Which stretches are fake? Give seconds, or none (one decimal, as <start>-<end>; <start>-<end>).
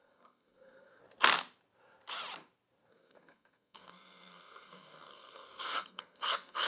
0.0-1.0; 2.9-6.7